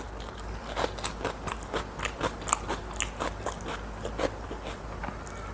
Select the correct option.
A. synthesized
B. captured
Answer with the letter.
B